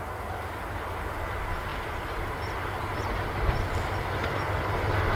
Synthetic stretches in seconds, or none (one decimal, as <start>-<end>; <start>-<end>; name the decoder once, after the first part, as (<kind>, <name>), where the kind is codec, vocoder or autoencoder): none